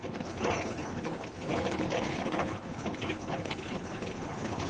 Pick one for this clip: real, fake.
fake